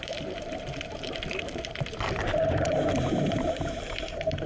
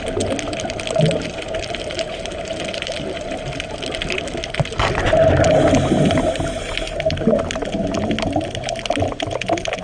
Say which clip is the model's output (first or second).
first